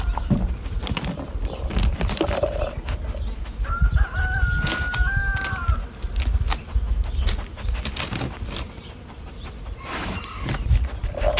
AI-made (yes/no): no